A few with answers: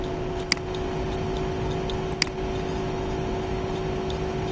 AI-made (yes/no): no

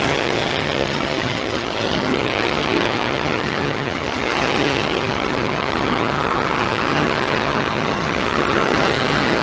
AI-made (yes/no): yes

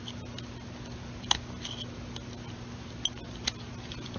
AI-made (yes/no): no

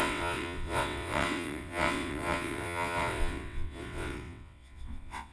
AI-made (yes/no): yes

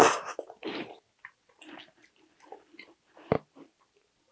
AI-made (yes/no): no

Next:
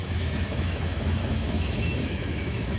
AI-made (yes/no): yes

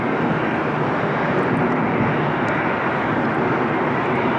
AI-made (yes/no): no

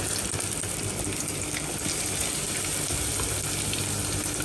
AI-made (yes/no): no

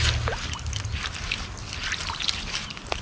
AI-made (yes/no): no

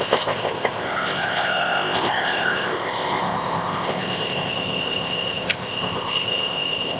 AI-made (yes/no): yes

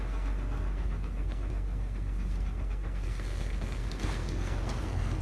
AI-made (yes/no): yes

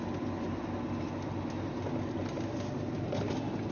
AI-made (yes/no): no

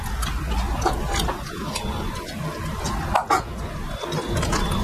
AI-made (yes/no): no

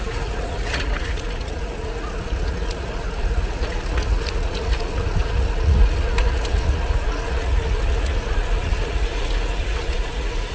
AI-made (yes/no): yes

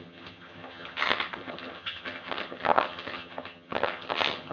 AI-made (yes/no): yes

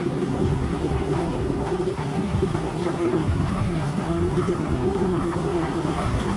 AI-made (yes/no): yes